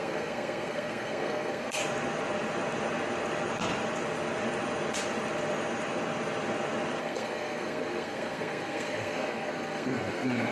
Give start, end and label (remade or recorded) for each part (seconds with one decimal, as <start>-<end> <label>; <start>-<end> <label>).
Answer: 0.0-1.8 remade; 1.8-7.0 recorded; 7.0-10.5 remade